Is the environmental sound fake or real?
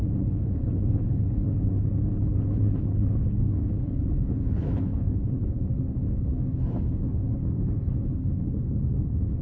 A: fake